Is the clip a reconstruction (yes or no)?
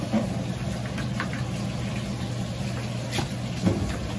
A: no